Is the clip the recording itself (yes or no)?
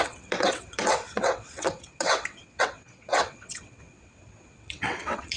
no